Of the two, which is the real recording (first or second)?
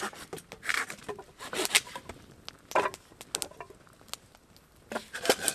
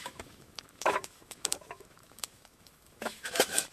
first